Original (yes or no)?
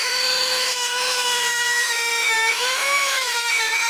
no